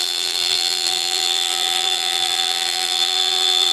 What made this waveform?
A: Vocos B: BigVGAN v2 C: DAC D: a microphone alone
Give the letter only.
B